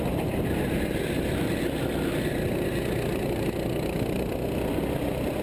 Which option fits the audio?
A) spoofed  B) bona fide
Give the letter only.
B